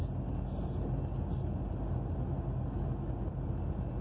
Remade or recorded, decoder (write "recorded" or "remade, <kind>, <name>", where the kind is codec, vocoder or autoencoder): recorded